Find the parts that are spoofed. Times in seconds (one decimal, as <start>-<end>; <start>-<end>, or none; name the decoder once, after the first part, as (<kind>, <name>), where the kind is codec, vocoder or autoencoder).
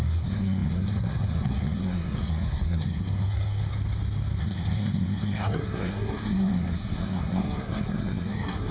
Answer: 0.0-3.7 (codec, SNAC); 4.4-8.7